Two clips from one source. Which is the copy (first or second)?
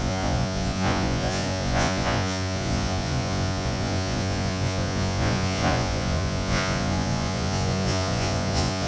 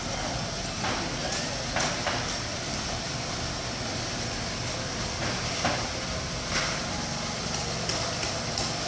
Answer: first